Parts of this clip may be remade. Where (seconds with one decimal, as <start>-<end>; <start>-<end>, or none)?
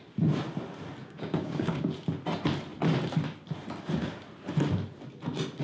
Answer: 1.0-1.8